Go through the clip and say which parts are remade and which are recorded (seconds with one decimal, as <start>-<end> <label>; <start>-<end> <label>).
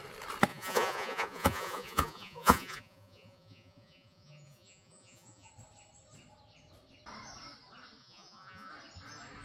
0.0-0.5 recorded; 0.5-5.5 remade; 5.5-8.0 recorded; 8.0-8.7 remade; 8.7-9.4 recorded